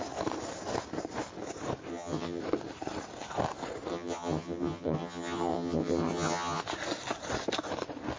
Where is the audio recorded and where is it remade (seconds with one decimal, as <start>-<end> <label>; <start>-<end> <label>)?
0.0-1.9 recorded; 1.9-2.4 remade; 2.4-3.9 recorded; 3.9-6.6 remade; 6.6-8.2 recorded